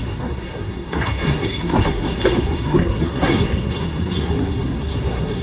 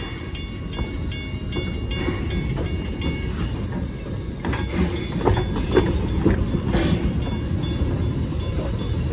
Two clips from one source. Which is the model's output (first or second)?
first